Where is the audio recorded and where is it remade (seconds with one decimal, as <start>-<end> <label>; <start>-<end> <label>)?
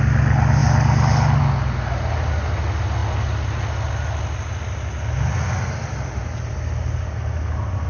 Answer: 0.0-7.9 recorded